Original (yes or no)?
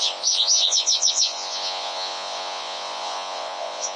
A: no